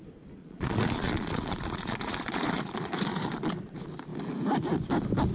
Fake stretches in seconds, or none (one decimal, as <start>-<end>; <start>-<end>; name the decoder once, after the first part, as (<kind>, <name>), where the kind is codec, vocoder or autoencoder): 0.4-3.5 (vocoder, Vocos)